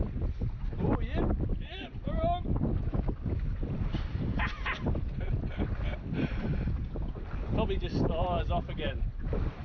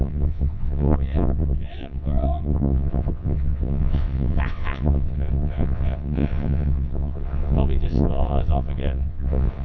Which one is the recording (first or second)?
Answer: first